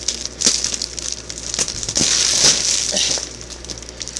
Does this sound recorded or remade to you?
recorded